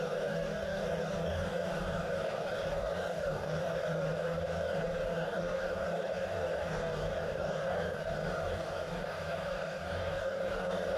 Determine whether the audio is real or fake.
fake